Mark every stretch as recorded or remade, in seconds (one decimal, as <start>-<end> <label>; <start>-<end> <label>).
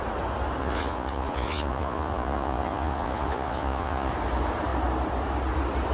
0.0-0.6 recorded; 0.6-4.1 remade; 4.1-5.9 recorded